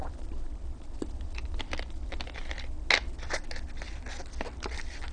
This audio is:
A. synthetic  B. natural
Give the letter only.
B